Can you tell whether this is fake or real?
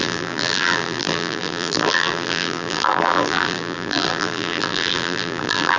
fake